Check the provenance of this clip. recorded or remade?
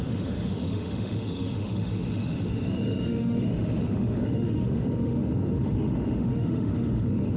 remade